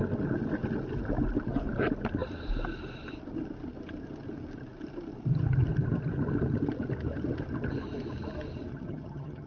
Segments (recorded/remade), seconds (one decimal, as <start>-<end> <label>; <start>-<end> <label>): 0.0-8.7 recorded; 8.7-9.5 remade